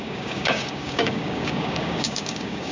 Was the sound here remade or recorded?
remade